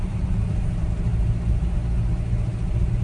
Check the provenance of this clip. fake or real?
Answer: real